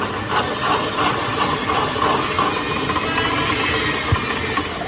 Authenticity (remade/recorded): recorded